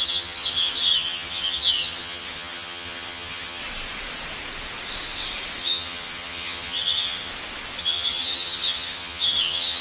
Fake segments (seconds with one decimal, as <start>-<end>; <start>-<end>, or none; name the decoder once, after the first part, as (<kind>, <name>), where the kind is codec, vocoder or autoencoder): 0.0-3.6 (vocoder, HiFi-GAN); 5.6-7.3; 7.8-9.8

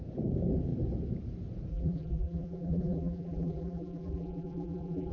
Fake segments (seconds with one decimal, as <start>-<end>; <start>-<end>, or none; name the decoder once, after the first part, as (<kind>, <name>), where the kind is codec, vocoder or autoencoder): 1.7-5.1 (vocoder, BigVGAN v2)

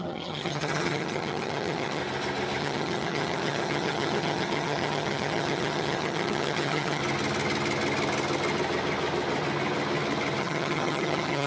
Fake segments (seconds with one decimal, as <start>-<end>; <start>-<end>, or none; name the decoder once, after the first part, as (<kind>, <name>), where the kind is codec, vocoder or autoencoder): 0.0-2.0 (vocoder, HiFi-GAN); 2.6-7.0; 10.4-11.5

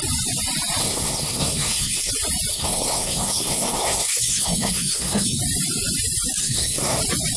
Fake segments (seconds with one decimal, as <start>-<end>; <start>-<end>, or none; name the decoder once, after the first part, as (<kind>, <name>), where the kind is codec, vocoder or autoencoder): 0.8-2.1 (codec, SNAC); 2.5-5.4; 6.4-7.0